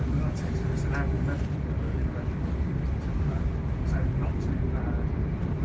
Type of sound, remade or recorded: recorded